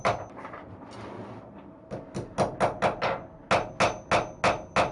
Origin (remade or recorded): recorded